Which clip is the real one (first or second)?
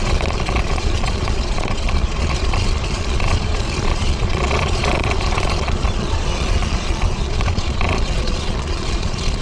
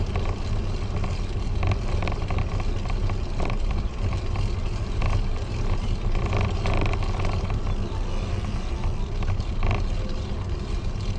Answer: second